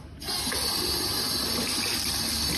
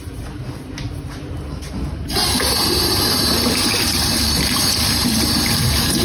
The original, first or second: first